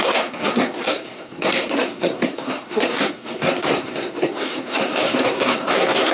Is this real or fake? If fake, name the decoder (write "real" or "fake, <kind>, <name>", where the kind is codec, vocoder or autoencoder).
fake, codec, SNAC